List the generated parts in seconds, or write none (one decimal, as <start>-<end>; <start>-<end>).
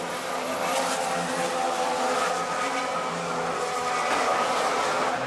none